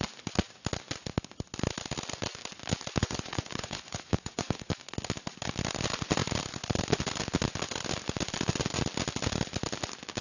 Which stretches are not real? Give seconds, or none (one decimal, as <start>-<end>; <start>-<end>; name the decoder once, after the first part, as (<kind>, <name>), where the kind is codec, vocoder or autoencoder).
3.0-4.7 (vocoder, Vocos)